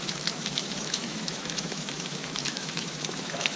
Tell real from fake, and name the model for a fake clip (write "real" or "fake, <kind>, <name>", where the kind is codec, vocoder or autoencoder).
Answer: fake, autoencoder, DAC-VAE